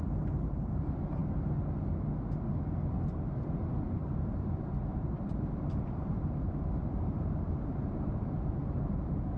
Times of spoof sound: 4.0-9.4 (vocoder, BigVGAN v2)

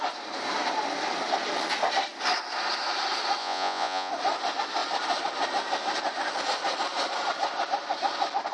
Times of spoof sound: 3.4-4.1 (vocoder, Vocos)